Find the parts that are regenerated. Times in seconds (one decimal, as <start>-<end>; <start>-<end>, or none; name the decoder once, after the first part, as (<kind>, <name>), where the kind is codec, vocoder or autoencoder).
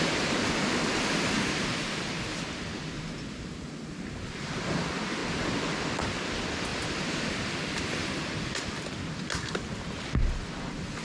none